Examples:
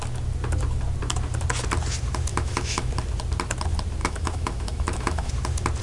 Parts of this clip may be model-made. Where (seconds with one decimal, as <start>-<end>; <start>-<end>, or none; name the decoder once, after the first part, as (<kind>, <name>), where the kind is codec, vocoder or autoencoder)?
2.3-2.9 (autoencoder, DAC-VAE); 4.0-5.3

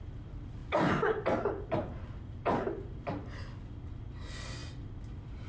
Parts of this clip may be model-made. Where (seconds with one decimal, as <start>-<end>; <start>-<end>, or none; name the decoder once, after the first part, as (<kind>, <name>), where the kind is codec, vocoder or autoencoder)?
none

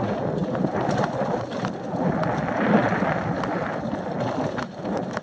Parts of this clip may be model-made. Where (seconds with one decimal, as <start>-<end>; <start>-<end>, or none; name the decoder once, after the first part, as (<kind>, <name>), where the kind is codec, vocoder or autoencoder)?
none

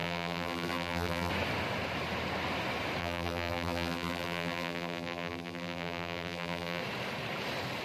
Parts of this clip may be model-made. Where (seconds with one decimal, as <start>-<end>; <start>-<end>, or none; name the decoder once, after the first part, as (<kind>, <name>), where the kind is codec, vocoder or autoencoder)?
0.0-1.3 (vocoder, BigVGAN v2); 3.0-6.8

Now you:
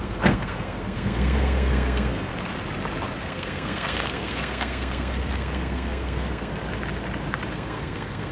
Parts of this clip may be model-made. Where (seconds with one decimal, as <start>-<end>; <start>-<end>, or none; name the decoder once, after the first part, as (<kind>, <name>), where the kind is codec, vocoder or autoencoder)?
0.0-2.3 (codec, SNAC); 3.2-6.5; 7.5-8.3